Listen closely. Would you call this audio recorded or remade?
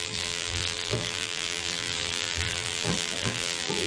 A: remade